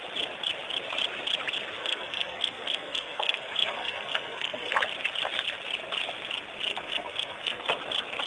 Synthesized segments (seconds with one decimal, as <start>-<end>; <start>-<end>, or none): 1.8-4.7; 6.7-7.6